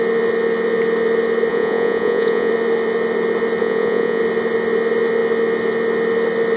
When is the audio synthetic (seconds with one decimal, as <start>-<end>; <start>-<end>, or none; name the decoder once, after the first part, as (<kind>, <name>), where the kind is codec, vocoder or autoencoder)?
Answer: 1.5-2.5 (vocoder, Vocos); 3.6-4.2